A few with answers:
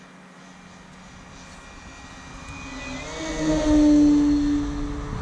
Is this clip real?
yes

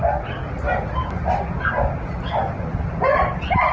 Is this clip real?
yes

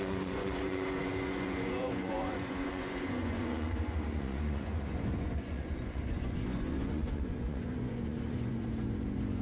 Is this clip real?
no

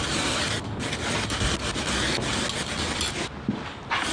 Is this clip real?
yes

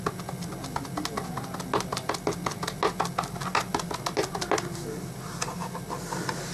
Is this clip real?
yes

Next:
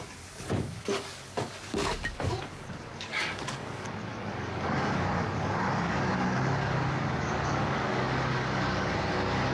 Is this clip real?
no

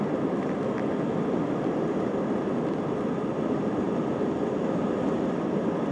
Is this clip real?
yes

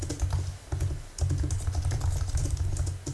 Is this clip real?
yes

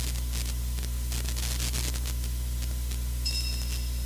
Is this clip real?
yes